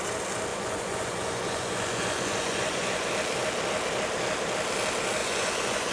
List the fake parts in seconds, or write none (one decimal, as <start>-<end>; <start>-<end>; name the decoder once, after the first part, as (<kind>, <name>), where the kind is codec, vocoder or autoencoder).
0.5-3.1 (vocoder, Vocos); 5.2-5.9